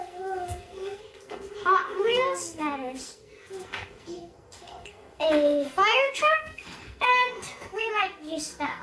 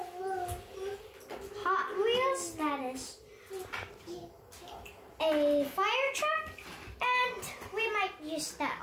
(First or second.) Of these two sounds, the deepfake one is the first